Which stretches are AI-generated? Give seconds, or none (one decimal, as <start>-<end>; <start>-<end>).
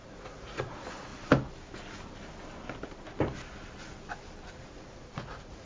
0.0-1.1; 4.5-5.7